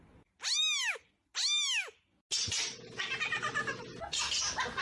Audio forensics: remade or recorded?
recorded